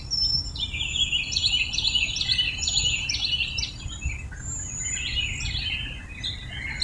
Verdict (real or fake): real